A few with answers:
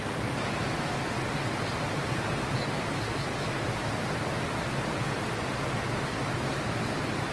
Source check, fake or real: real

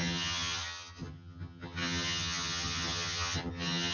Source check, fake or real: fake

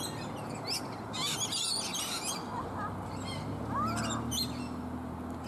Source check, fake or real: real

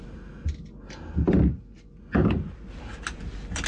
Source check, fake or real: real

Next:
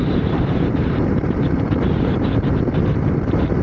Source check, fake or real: fake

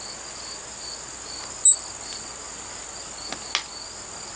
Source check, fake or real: real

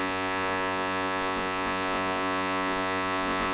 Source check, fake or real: fake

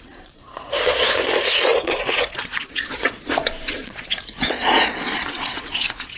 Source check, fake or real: fake